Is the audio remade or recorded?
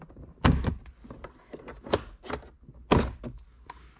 recorded